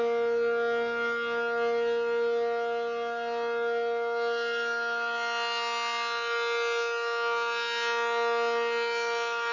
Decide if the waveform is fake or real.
real